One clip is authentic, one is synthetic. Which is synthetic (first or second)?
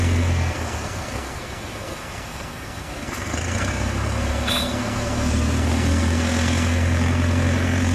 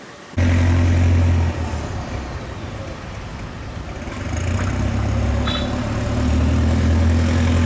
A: first